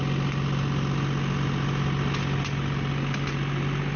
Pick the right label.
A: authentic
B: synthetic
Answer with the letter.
A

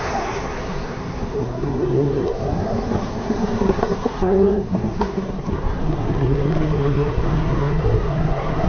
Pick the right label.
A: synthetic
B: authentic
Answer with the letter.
A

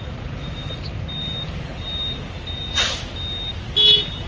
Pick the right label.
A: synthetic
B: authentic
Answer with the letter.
B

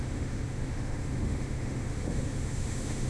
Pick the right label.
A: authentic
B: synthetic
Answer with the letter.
B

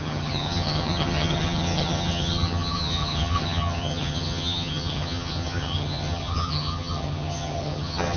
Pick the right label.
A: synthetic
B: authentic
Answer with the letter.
A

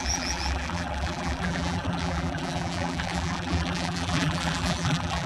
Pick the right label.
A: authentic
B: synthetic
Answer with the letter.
B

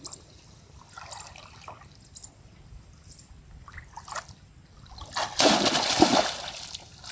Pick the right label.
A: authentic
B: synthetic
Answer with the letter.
A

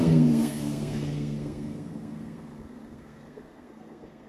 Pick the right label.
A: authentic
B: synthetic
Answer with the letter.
B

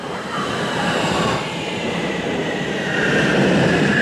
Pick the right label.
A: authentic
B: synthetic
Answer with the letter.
B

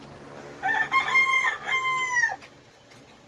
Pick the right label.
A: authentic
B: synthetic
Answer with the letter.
A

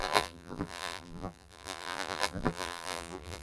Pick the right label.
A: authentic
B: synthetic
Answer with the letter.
B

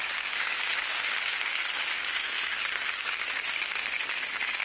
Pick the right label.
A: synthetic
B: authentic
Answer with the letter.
A